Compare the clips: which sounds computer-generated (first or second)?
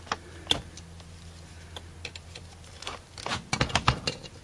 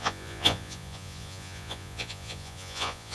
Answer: second